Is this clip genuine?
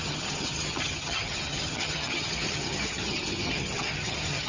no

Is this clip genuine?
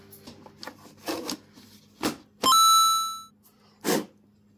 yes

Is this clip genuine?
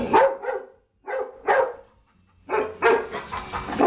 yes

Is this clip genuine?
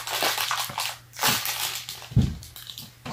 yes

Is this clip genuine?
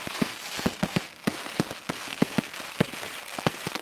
no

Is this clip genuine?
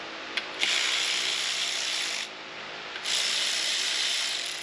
yes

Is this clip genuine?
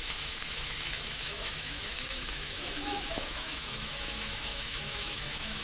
no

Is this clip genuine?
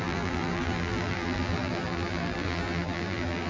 no